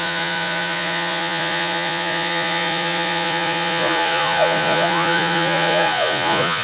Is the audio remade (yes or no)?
yes